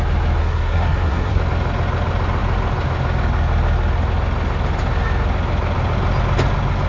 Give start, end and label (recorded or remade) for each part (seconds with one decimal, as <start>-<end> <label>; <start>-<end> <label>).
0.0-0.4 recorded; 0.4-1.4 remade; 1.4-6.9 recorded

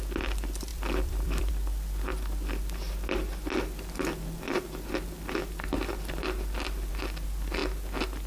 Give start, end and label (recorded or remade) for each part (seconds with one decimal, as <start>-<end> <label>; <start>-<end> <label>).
0.0-0.7 recorded; 0.7-1.5 remade; 1.5-8.3 recorded

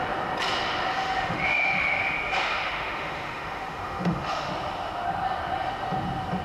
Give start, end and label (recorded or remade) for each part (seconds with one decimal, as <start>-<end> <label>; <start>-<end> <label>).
0.0-0.9 recorded; 0.9-4.5 remade; 4.5-6.4 recorded